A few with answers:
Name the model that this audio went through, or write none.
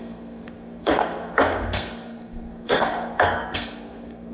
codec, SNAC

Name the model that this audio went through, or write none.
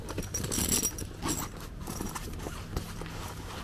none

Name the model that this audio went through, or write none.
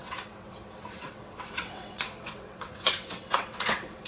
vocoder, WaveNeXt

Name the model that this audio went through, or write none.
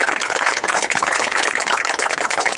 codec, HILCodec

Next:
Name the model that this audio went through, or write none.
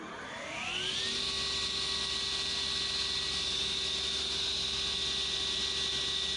none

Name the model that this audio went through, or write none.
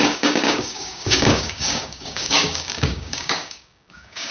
codec, DAC